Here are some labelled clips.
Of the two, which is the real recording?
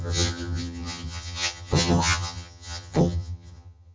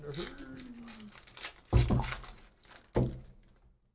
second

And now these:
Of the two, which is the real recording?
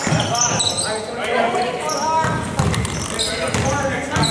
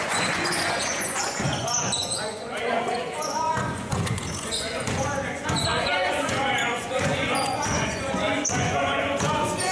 first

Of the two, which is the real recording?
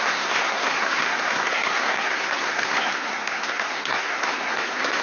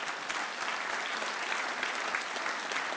second